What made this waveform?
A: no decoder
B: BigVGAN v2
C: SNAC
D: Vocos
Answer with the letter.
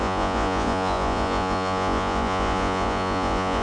D